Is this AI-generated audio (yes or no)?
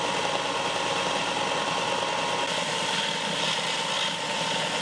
no